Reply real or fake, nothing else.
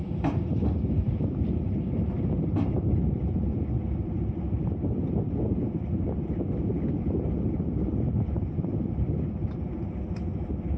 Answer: fake